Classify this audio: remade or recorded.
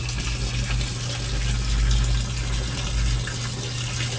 recorded